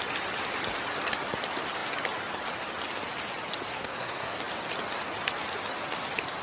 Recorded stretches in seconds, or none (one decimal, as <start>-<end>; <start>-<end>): 0.0-3.7; 4.4-6.4